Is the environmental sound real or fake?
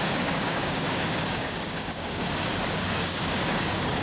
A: fake